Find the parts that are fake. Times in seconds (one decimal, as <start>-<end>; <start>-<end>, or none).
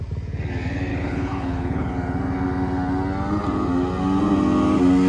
0.9-1.9